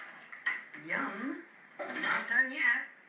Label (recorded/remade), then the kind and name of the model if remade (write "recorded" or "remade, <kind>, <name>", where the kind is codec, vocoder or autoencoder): remade, codec, DAC